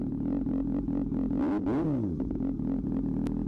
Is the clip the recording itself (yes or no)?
yes